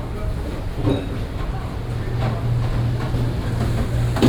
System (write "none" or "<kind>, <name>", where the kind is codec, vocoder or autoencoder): none